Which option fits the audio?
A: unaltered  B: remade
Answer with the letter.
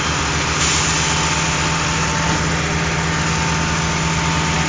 A